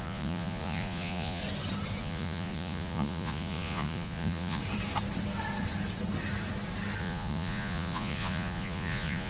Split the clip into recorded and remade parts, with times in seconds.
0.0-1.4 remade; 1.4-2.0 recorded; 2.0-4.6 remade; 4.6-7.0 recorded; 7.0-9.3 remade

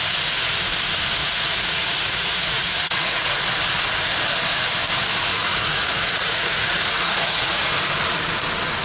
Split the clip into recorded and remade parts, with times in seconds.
0.0-1.2 recorded; 1.2-3.2 remade; 3.2-5.3 recorded; 5.3-7.7 remade; 7.7-8.8 recorded